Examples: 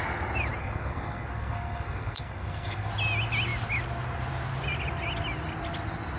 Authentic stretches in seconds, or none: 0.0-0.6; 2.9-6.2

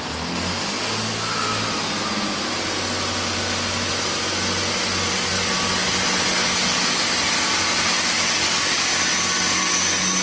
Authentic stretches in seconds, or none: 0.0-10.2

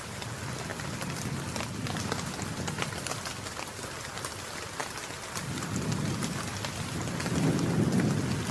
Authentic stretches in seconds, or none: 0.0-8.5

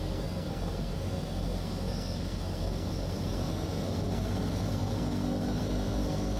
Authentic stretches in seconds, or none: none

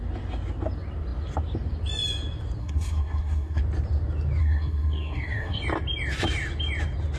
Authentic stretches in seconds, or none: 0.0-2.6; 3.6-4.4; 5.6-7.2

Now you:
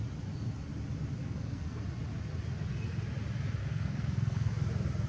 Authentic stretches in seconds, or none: 0.0-1.2; 1.8-3.6; 4.5-5.1

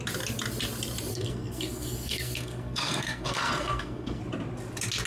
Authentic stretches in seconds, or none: 0.0-1.1; 4.2-5.1